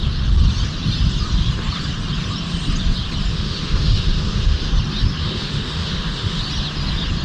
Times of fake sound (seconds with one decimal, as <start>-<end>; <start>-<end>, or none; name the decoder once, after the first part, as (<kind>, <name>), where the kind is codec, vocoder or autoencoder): 3.3-4.7 (autoencoder, DAC-VAE); 5.2-6.4